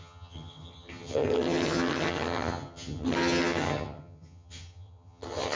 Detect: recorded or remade remade